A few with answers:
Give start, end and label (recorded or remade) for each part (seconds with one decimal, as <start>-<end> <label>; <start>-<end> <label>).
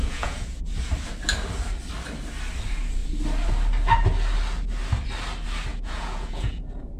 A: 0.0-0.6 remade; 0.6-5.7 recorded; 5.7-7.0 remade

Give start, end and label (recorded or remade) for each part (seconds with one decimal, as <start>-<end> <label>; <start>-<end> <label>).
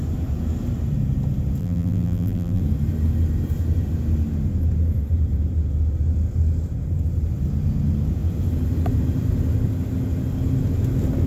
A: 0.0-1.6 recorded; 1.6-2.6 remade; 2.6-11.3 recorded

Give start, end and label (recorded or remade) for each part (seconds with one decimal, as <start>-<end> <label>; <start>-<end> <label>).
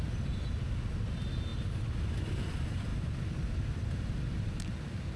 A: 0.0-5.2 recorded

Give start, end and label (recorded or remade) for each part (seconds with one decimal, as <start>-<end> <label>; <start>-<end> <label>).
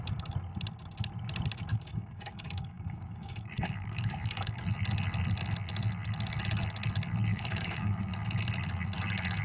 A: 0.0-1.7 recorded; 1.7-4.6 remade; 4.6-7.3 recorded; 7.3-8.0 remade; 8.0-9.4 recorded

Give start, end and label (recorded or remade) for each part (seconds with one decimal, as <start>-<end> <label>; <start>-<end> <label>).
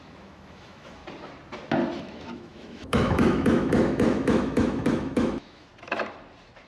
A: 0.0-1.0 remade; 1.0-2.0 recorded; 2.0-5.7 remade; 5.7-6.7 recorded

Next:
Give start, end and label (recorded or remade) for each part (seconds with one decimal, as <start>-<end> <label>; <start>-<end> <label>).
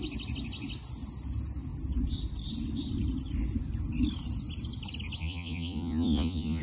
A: 0.0-5.2 recorded; 5.2-6.6 remade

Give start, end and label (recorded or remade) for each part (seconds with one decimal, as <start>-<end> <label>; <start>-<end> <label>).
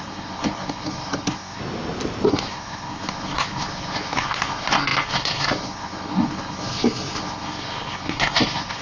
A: 0.0-1.6 remade; 1.6-2.3 recorded; 2.3-8.8 remade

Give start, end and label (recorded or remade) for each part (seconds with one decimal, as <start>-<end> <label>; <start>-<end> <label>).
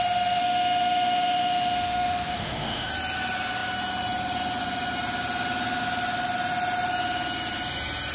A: 0.0-0.4 recorded; 0.4-2.9 remade; 2.9-8.1 recorded